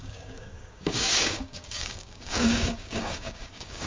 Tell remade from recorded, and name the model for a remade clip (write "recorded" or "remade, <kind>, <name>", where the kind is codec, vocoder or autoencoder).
remade, codec, DAC